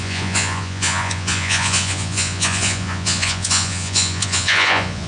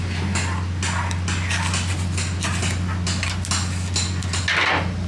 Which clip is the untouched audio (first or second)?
second